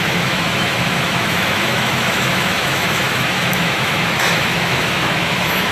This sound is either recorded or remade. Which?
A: remade